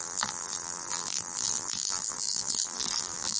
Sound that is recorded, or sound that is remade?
remade